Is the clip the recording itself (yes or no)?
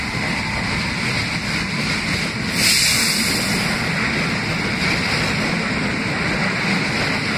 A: yes